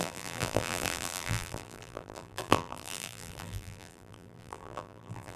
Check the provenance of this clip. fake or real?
fake